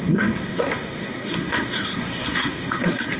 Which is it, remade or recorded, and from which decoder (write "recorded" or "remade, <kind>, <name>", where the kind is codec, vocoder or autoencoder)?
remade, codec, SNAC